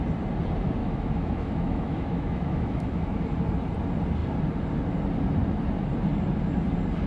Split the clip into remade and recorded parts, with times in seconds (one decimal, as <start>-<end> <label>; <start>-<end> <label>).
0.0-0.8 recorded; 0.8-3.2 remade; 3.2-7.1 recorded